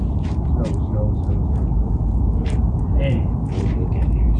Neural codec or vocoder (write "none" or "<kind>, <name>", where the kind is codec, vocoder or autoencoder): none